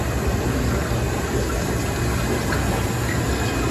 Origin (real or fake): real